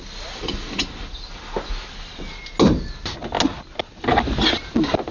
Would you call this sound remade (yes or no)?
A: no